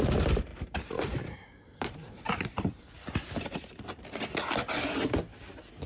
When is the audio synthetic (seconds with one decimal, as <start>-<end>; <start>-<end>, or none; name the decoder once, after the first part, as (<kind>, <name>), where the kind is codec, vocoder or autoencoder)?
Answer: 0.5-4.0 (vocoder, BigVGAN v2)